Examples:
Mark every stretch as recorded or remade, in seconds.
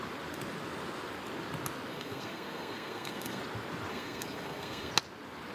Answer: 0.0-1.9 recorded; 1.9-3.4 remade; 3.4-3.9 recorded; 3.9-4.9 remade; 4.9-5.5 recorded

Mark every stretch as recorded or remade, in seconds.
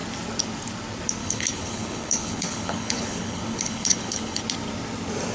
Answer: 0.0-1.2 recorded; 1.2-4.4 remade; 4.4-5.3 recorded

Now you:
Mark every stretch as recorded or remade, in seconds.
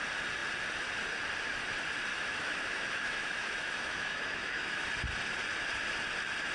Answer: 0.0-2.1 recorded; 2.1-4.8 remade; 4.8-6.5 recorded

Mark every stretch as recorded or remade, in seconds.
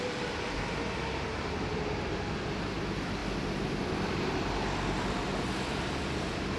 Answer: 0.0-6.6 recorded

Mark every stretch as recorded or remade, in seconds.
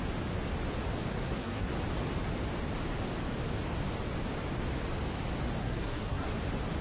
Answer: 0.0-1.1 recorded; 1.1-1.7 remade; 1.7-5.6 recorded; 5.6-6.3 remade; 6.3-6.8 recorded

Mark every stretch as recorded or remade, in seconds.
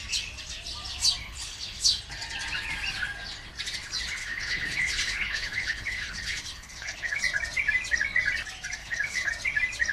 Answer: 0.0-1.2 recorded; 1.2-2.0 remade; 2.0-4.2 recorded; 4.2-7.2 remade; 7.2-8.8 recorded; 8.8-9.3 remade; 9.3-9.9 recorded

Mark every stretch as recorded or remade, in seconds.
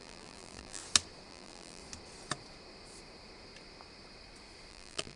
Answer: 0.0-0.8 remade; 0.8-1.3 recorded; 1.3-1.8 remade; 1.8-4.7 recorded; 4.7-5.2 remade